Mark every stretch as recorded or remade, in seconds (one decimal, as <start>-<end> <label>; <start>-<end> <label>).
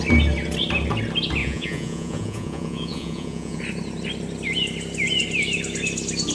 0.0-1.4 recorded; 1.4-3.6 remade; 3.6-6.3 recorded